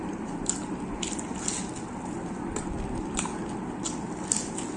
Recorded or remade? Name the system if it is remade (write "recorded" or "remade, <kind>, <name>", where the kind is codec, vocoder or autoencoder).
recorded